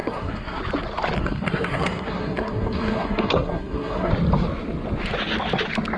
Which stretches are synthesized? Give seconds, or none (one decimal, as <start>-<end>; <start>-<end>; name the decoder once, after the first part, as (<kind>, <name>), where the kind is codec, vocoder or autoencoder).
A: 0.0-0.6 (codec, SNAC); 1.2-4.1